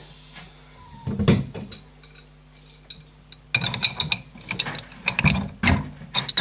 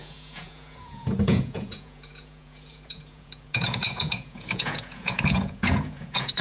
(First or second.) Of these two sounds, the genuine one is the first